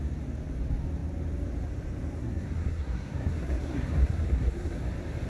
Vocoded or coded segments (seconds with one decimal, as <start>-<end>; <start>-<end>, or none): 2.2-4.8